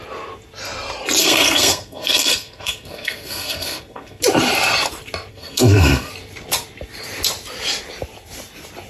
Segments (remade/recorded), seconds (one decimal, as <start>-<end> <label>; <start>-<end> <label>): 0.0-1.2 recorded; 1.2-4.2 remade; 4.2-5.3 recorded; 5.3-6.1 remade; 6.1-8.9 recorded